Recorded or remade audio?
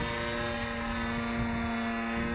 recorded